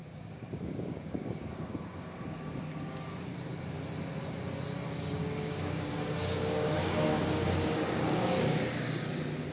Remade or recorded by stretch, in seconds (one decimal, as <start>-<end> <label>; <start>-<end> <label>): 0.0-3.1 remade; 3.1-5.2 recorded; 5.2-9.1 remade; 9.1-9.5 recorded